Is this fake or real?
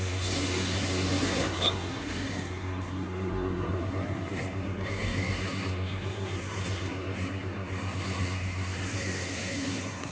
fake